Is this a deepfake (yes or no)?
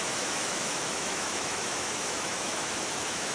yes